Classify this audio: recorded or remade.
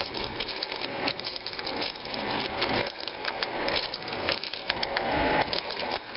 remade